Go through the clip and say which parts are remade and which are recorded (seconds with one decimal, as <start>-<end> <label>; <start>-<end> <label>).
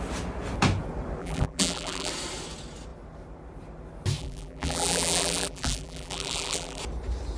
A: 0.0-1.2 recorded; 1.2-2.1 remade; 2.1-4.2 recorded; 4.2-6.8 remade; 6.8-7.4 recorded